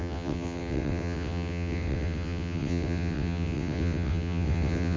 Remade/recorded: remade